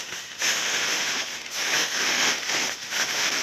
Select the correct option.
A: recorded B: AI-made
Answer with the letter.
B